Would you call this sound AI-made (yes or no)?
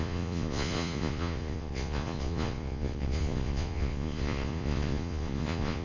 yes